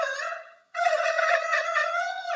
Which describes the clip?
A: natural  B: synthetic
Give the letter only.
B